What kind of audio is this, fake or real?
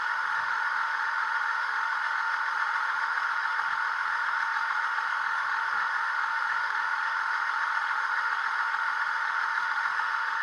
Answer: fake